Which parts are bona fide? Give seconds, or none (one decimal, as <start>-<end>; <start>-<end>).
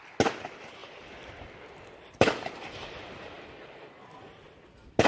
0.0-0.8; 3.9-5.1